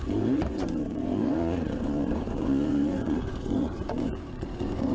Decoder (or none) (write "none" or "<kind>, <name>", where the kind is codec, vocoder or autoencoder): vocoder, Vocos